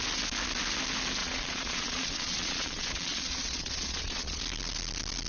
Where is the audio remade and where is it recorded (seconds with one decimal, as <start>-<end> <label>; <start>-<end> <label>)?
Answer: 0.0-1.2 recorded; 1.2-4.4 remade; 4.4-5.3 recorded